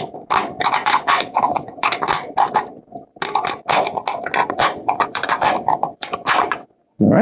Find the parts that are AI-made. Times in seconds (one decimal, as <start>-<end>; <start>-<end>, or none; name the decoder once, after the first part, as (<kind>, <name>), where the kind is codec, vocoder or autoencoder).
0.8-2.0 (vocoder, Vocos); 4.4-7.2